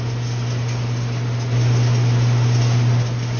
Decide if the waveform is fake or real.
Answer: real